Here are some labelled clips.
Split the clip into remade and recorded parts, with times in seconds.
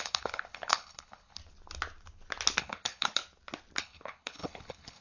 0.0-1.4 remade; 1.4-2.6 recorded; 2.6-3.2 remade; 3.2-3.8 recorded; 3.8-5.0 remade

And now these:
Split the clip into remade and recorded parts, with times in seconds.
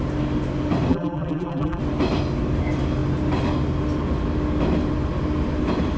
0.0-0.9 recorded; 0.9-1.8 remade; 1.8-6.0 recorded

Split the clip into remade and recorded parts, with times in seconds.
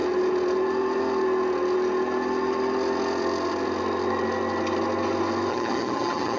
0.0-5.5 recorded; 5.5-6.4 remade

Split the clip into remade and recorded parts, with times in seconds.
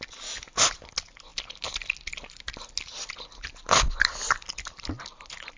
0.0-5.6 recorded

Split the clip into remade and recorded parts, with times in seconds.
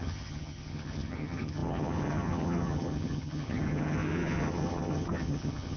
0.0-5.8 remade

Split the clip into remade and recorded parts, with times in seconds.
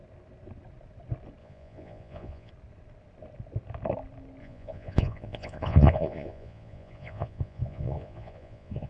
0.0-1.4 recorded; 1.4-2.5 remade; 2.5-4.4 recorded; 4.4-8.9 remade